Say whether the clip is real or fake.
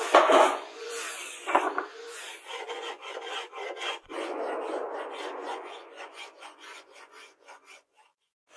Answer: fake